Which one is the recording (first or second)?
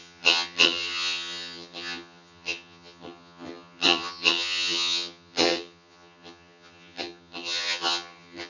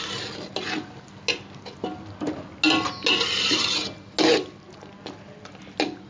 second